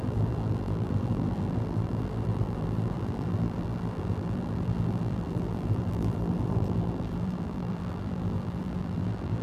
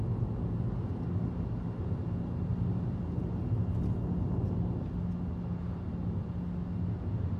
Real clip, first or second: second